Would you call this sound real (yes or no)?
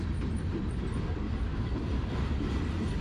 no